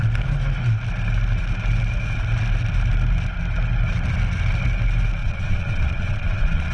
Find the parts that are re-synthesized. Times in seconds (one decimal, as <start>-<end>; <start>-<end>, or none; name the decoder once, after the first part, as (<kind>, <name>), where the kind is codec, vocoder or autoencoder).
5.2-6.7 (vocoder, Vocos)